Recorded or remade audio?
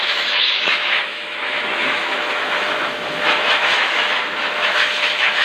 remade